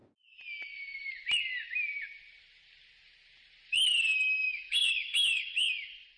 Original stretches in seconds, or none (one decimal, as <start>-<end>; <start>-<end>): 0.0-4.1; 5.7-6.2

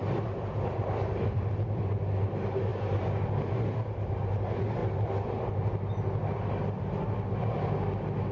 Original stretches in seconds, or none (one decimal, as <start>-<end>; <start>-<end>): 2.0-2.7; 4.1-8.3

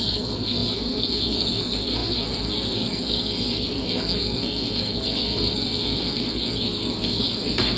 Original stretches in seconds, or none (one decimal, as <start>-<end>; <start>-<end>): none